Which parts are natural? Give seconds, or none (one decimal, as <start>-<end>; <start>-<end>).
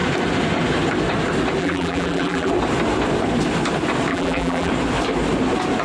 0.0-1.6; 2.5-4.1; 4.7-5.8